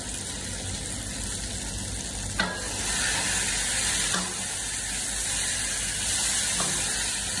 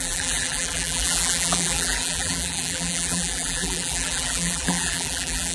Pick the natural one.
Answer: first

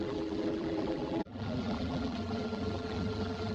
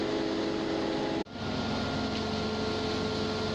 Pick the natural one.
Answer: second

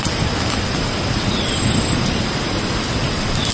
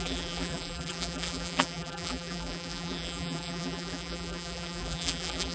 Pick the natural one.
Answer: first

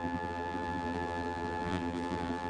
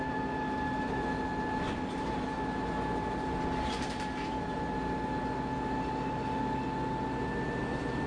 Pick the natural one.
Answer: second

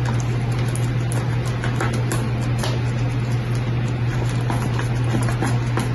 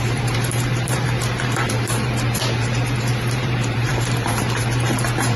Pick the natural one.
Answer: first